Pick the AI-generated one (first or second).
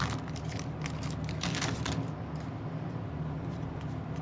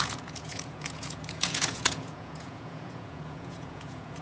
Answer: second